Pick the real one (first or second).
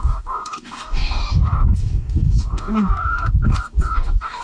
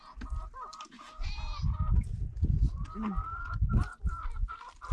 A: second